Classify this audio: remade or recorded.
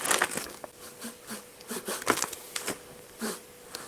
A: remade